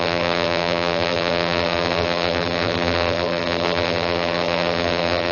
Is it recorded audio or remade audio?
remade